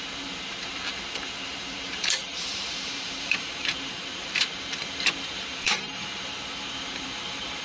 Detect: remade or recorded remade